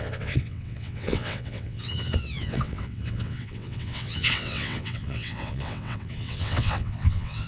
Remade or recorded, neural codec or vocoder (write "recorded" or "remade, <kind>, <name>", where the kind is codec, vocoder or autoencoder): remade, vocoder, WaveNeXt